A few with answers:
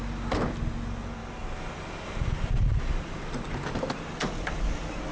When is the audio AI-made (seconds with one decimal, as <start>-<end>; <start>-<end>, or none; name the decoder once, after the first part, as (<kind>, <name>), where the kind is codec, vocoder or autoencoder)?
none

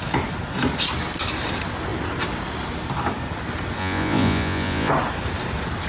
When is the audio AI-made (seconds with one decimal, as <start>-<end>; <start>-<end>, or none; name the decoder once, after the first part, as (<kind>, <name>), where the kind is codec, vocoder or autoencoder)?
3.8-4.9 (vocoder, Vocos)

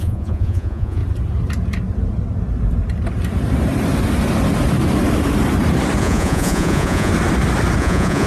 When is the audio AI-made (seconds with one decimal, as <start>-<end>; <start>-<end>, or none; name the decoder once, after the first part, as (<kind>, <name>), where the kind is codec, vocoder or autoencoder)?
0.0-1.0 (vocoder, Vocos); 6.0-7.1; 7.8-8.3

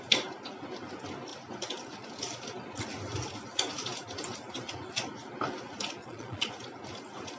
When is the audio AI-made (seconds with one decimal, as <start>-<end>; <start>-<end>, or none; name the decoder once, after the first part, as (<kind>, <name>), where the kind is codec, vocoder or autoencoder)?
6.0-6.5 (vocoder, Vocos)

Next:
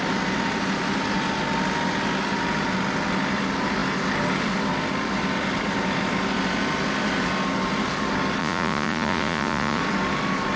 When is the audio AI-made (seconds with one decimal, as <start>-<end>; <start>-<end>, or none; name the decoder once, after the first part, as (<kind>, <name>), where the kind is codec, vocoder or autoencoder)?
8.4-9.8 (vocoder, Vocos)

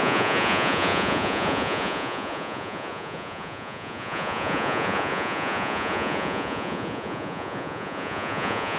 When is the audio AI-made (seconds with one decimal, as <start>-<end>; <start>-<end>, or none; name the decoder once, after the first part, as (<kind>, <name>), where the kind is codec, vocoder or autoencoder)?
0.0-8.8 (vocoder, Vocos)

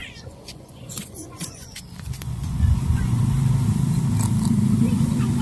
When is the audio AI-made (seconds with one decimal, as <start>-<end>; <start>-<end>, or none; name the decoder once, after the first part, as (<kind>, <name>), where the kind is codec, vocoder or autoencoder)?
0.0-3.2 (vocoder, Vocos)

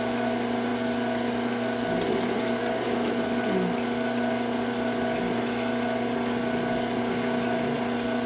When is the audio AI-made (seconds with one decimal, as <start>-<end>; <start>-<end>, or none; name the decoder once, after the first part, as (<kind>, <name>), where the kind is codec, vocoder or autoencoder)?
none